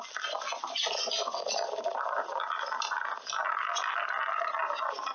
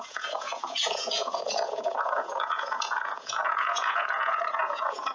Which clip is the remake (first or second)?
second